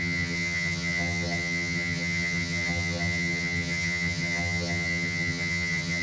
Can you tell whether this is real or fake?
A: fake